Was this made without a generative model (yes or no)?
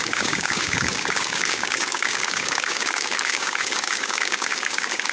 no